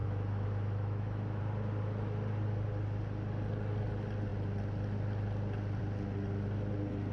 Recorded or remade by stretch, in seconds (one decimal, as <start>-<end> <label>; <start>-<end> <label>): 0.0-1.4 remade; 1.4-7.1 recorded